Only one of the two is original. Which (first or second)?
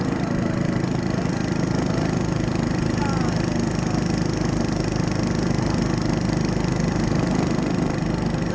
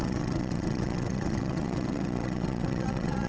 first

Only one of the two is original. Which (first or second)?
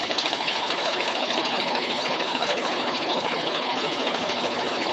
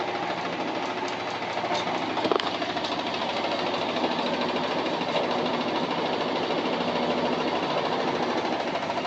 second